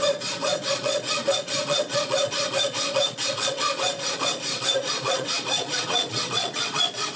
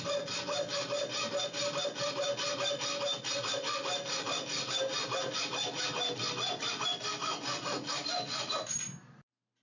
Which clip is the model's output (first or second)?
first